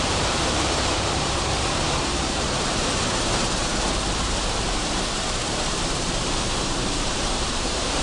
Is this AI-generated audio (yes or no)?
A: yes